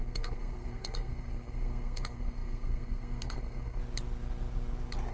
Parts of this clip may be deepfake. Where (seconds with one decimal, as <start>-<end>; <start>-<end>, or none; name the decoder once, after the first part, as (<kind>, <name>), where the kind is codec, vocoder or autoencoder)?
0.0-3.8 (codec, SNAC)